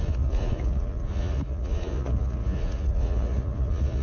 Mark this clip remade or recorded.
remade